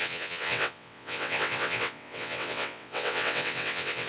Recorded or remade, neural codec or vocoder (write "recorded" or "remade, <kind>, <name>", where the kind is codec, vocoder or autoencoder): remade, vocoder, WaveNeXt